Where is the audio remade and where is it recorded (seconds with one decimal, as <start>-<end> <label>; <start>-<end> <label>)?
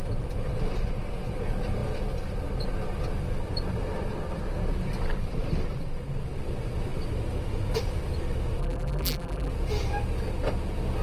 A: 0.0-8.6 recorded; 8.6-9.5 remade; 9.5-11.0 recorded